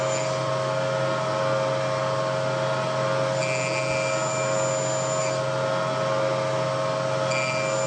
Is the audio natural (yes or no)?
yes